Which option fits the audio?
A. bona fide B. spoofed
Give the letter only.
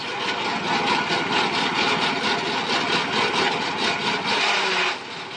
A